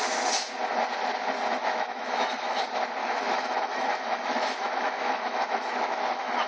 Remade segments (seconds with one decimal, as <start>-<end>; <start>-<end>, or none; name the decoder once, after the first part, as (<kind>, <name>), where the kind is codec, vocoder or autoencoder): 1.6-2.6 (autoencoder, DAC-VAE); 3.0-6.5